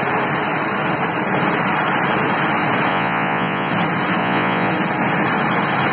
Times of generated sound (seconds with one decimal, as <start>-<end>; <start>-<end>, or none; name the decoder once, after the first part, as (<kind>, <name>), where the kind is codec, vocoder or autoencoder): 2.9-3.7 (vocoder, Vocos); 4.2-4.7

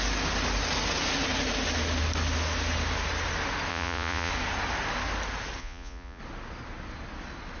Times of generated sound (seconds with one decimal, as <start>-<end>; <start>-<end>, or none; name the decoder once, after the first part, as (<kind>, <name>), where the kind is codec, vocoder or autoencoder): 3.7-4.3 (vocoder, Vocos); 5.6-6.2

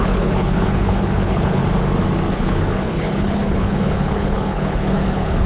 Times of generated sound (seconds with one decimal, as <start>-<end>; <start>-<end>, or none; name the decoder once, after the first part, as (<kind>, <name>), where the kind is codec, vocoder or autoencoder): 0.0-1.6 (codec, HILCodec); 2.3-5.5

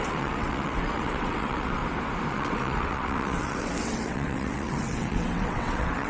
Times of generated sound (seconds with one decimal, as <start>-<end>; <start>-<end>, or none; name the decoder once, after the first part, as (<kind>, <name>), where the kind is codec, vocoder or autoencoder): 0.0-1.8 (vocoder, WaveNeXt); 2.3-6.1

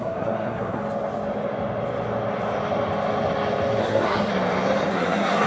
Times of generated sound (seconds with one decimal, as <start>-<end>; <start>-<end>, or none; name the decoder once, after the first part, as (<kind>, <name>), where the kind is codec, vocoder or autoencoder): 0.0-0.8 (codec, SNAC); 3.8-4.3; 4.9-5.5